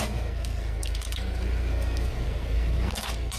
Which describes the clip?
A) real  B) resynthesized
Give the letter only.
B